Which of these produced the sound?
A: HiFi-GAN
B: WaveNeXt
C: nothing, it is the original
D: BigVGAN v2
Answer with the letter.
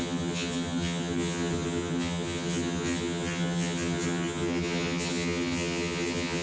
A